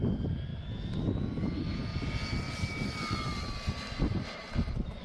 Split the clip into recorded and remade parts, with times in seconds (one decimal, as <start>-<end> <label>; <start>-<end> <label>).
0.0-5.0 recorded